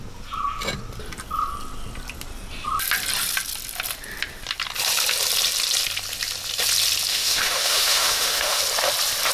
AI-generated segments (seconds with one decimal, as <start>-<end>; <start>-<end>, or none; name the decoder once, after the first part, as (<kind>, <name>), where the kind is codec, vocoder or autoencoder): 7.1-8.6 (autoencoder, DAC-VAE)